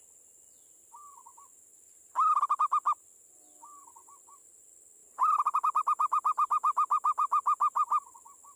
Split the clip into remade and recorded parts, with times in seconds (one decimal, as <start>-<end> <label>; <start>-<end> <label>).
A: 0.0-5.0 recorded; 5.0-8.0 remade; 8.0-8.6 recorded